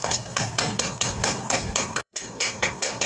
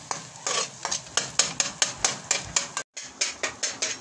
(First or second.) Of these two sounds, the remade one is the first